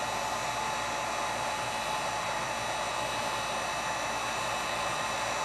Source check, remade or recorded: recorded